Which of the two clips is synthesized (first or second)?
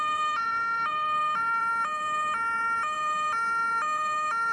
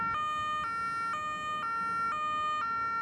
first